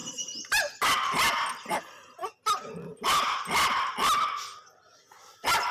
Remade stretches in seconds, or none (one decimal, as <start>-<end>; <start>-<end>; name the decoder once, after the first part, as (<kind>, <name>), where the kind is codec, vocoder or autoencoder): none